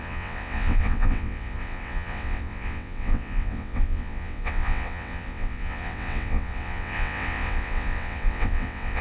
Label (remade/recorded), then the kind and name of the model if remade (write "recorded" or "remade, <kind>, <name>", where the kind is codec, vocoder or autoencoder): remade, vocoder, WaveNeXt